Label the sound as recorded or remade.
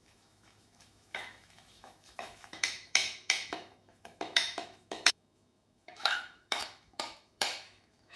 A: remade